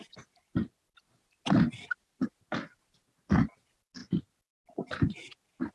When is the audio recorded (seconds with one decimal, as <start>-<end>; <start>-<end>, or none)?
0.0-5.7